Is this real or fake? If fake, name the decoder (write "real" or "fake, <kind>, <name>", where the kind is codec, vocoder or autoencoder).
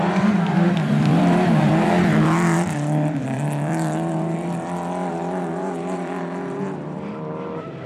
fake, vocoder, BigVGAN v2